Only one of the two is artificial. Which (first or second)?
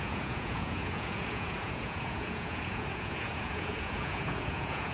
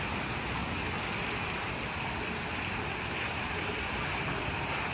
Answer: first